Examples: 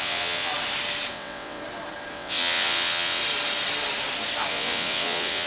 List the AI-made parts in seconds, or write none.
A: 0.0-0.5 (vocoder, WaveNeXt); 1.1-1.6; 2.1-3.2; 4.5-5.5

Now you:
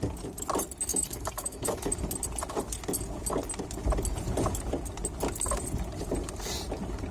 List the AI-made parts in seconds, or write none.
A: 0.9-1.9 (autoencoder, DAC-VAE)

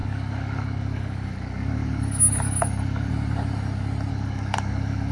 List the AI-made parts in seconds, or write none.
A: 0.0-3.1 (codec, DAC); 4.1-5.1

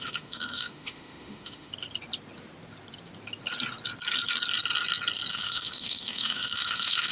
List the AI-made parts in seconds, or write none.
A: 0.0-1.7 (autoencoder, DAC-VAE); 5.3-7.1

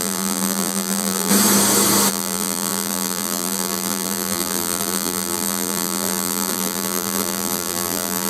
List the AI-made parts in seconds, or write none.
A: 0.0-1.3 (vocoder, BigVGAN v2); 2.1-8.3